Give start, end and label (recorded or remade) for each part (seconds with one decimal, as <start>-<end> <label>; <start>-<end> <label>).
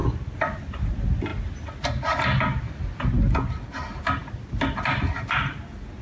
0.0-6.0 recorded